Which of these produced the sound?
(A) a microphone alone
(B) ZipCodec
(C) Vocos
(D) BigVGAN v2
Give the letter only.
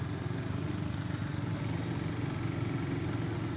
A